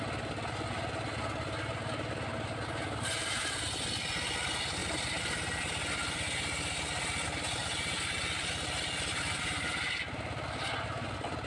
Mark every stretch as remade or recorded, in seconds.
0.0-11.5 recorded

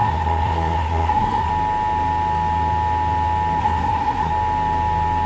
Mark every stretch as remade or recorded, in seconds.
0.0-1.5 remade; 1.5-3.6 recorded; 3.6-4.3 remade; 4.3-5.3 recorded

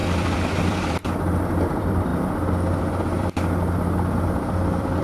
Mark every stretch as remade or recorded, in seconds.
0.0-2.1 remade; 2.1-2.8 recorded; 2.8-5.0 remade

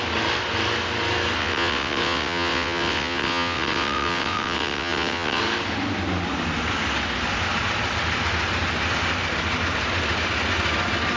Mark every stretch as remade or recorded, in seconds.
0.0-1.4 recorded; 1.4-5.4 remade; 5.4-11.2 recorded

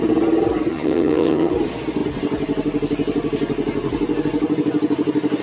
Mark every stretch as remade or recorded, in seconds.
0.0-0.7 recorded; 0.7-1.5 remade; 1.5-5.4 recorded

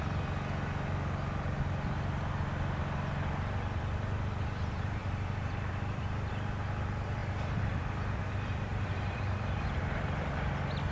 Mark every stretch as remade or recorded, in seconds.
0.0-5.0 recorded; 5.0-6.3 remade; 6.3-7.2 recorded; 7.2-7.8 remade; 7.8-8.7 recorded; 8.7-10.3 remade; 10.3-10.9 recorded